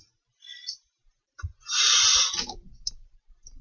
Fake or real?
real